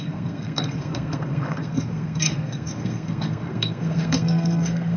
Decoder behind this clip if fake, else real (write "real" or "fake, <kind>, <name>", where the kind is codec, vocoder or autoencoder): fake, codec, SNAC